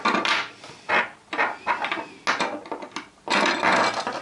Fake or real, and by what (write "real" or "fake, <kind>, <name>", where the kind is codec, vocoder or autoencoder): real